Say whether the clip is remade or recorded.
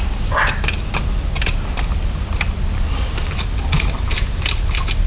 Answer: recorded